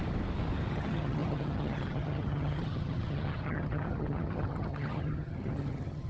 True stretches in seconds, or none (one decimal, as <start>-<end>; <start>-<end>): 0.0-0.7

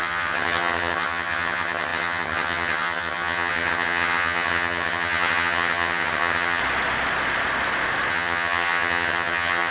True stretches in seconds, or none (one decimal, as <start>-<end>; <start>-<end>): 6.6-8.1